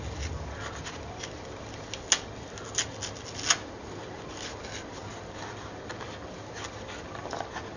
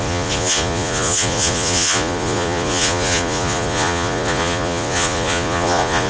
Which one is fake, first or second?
second